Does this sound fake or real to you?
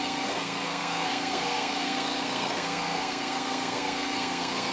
fake